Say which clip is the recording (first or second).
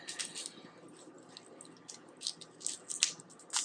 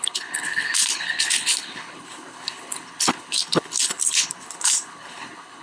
first